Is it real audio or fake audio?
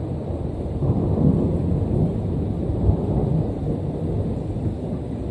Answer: real